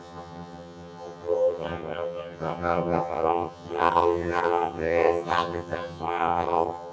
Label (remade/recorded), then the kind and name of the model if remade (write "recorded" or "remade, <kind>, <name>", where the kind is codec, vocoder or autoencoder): remade, vocoder, HiFi-GAN